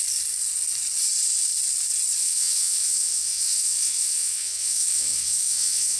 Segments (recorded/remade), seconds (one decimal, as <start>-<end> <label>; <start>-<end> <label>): 0.0-2.2 recorded; 2.2-6.0 remade